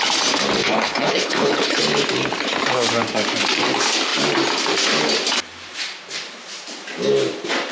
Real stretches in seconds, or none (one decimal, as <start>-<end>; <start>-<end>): 0.0-0.6; 1.8-7.7